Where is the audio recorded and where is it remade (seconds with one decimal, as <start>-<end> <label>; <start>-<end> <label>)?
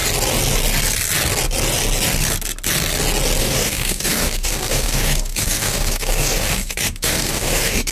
0.0-3.4 recorded; 3.4-7.9 remade